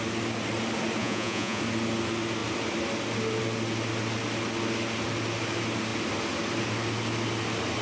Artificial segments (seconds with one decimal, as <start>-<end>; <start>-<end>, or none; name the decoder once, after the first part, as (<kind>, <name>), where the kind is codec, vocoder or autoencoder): 1.0-1.6 (vocoder, Vocos)